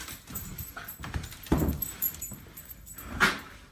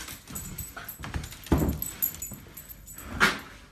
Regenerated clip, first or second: first